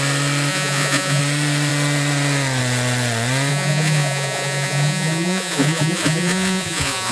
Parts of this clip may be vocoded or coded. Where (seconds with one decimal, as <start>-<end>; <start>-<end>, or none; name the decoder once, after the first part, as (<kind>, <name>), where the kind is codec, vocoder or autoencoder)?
0.5-1.2 (vocoder, Vocos); 3.5-7.1